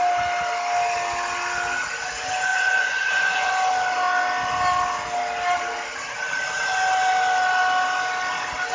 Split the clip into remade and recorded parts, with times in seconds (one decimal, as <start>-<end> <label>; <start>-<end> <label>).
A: 0.0-2.5 recorded; 2.5-3.5 remade; 3.5-8.7 recorded